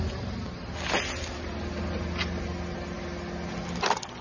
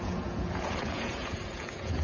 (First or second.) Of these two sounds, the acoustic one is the first